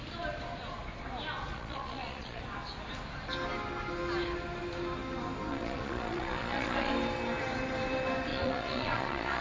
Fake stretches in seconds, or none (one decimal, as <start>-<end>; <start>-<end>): 1.5-2.4; 5.5-6.9; 8.3-9.4